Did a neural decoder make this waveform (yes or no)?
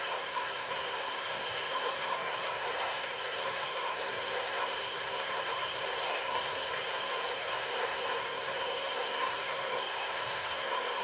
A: yes